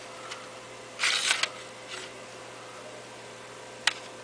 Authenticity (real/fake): real